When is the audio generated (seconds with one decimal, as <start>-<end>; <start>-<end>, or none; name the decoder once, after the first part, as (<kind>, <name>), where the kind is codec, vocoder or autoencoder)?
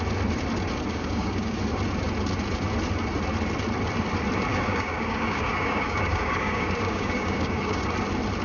0.9-1.6 (codec, DAC); 4.5-7.9